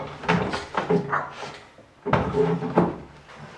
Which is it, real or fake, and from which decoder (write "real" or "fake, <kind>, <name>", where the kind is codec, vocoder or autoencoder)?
real